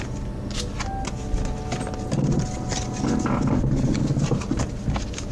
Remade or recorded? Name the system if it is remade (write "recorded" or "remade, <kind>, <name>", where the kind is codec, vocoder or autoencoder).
recorded